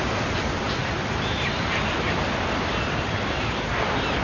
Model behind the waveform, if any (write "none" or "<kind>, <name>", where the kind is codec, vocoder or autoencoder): none